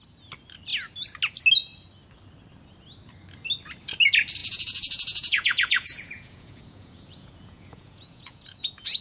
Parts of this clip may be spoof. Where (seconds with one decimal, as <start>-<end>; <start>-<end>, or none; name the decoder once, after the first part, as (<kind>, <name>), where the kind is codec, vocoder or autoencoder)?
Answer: 4.4-9.0 (vocoder, Vocos)